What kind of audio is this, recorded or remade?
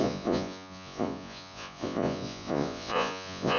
remade